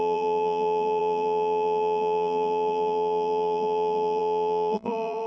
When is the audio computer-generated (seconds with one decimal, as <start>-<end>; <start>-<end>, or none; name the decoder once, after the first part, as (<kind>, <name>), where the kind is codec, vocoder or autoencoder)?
0.0-5.3 (vocoder, BigVGAN v2)